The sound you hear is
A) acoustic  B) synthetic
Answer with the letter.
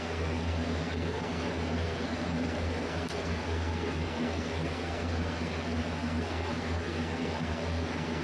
B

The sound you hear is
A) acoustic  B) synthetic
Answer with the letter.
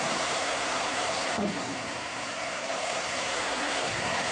B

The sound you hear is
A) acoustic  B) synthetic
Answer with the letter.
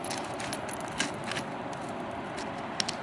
A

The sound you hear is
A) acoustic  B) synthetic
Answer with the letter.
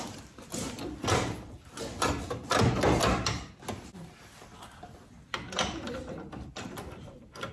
A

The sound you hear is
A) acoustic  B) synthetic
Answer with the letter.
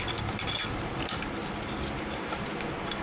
A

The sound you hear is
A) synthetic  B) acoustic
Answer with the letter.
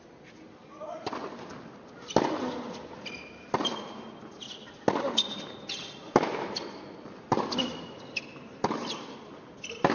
B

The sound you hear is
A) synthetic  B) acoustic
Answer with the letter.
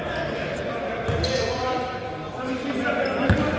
B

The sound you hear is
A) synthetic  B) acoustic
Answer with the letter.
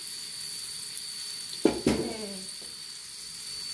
B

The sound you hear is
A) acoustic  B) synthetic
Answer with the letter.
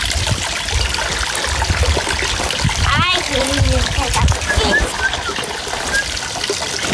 A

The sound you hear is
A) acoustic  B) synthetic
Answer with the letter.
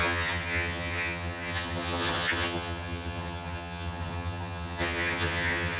B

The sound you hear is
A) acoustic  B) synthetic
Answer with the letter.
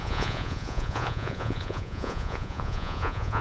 B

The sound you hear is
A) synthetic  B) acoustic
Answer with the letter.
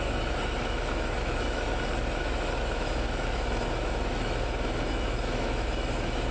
A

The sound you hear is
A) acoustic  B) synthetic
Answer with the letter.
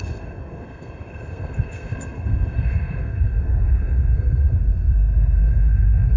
B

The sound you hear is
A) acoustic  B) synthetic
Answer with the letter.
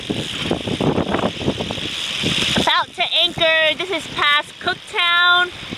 A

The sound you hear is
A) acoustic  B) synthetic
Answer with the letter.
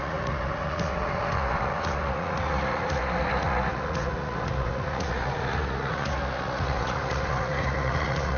B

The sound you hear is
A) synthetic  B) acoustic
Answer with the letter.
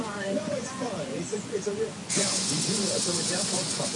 A